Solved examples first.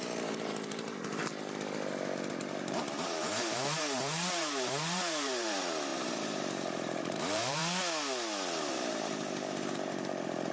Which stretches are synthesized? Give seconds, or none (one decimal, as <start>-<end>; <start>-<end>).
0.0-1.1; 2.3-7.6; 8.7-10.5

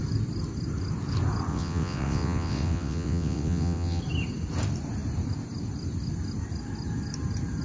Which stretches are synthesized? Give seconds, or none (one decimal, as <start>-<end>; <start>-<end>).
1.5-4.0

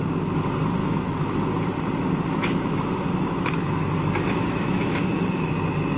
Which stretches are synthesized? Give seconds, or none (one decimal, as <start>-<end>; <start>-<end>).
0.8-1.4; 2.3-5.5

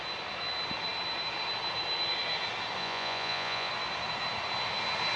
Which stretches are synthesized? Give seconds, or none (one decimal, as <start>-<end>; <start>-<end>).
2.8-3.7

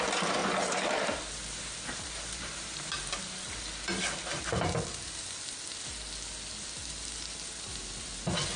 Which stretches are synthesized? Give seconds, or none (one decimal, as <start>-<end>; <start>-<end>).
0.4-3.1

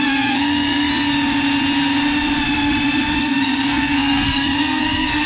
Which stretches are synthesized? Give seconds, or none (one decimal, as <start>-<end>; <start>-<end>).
0.0-0.9; 3.2-5.3